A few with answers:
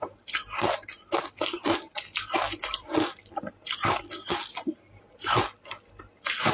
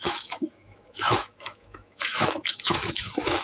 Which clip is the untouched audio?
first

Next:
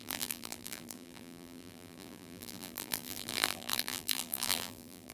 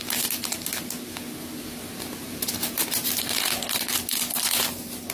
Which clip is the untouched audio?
second